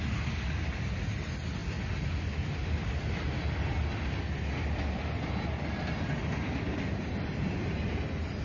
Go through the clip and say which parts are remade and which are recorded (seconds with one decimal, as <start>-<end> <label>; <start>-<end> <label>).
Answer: 0.0-8.4 recorded